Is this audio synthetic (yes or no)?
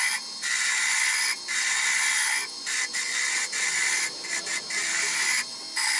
no